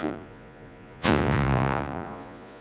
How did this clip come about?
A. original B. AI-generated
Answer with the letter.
B